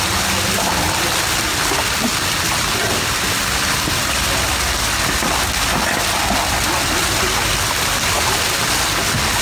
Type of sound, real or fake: real